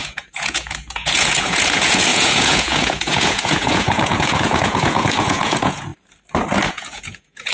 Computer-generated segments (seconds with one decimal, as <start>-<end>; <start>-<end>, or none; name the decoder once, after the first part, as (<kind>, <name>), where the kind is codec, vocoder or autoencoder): 0.0-5.9 (vocoder, Vocos); 6.7-7.5